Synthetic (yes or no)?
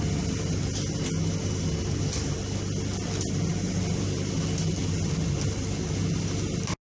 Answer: no